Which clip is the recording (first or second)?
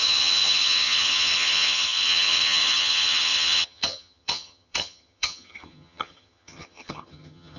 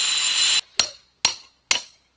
second